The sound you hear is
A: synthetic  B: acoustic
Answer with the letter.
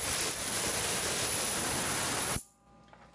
B